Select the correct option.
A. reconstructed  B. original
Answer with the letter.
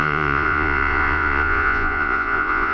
A